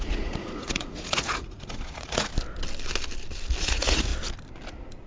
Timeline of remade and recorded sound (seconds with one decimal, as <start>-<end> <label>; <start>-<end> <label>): 0.0-2.3 remade; 2.3-3.6 recorded; 3.6-4.1 remade; 4.1-5.1 recorded